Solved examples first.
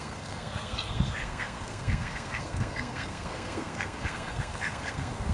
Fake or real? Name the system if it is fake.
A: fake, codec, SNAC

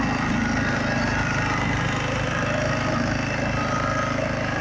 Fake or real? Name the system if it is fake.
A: real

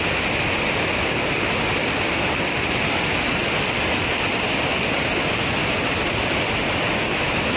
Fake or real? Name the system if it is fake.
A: real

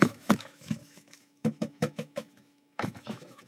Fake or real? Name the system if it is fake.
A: fake, autoencoder, DAC-VAE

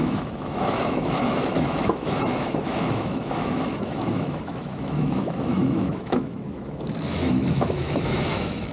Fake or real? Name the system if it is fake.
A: fake, autoencoder, DAC-VAE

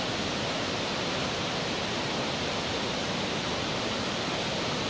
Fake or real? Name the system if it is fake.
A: real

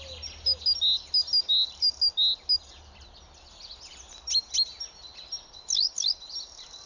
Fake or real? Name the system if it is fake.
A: real